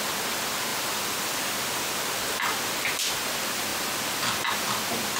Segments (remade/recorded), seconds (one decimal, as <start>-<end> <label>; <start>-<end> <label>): 0.0-0.7 recorded; 0.7-2.0 remade; 2.0-5.2 recorded